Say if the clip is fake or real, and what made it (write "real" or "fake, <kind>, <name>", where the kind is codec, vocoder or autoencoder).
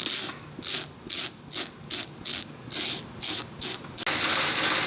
real